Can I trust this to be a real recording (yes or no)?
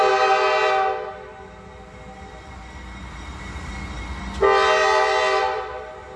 yes